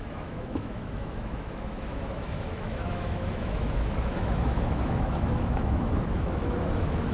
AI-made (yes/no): yes